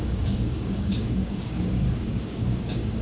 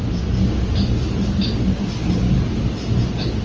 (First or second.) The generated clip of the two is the first